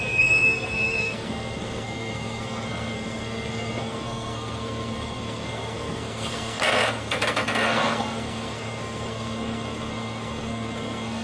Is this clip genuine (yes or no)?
no